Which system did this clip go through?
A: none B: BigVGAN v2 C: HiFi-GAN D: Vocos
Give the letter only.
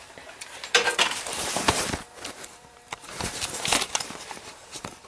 B